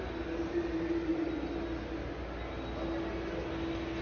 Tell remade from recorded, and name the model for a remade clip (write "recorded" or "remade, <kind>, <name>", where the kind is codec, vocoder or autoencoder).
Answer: recorded